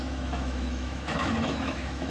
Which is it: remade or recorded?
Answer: remade